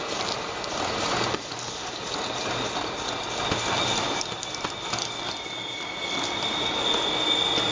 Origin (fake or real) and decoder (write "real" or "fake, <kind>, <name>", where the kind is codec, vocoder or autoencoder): real